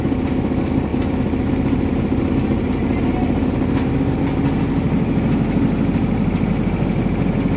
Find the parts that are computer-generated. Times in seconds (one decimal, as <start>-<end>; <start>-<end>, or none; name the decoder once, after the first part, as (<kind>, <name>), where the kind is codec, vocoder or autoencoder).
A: none